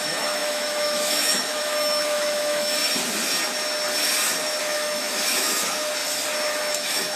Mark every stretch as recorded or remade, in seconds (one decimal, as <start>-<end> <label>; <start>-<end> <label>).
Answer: 0.0-2.8 remade; 2.8-4.6 recorded; 4.6-6.0 remade; 6.0-6.6 recorded; 6.6-7.2 remade